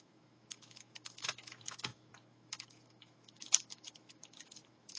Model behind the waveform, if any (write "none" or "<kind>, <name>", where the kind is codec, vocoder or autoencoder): autoencoder, DAC-VAE